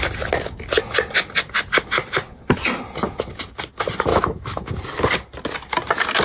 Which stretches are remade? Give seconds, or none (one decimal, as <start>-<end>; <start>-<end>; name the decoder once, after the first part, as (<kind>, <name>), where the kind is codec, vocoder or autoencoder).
4.1-4.7 (autoencoder, DAC-VAE)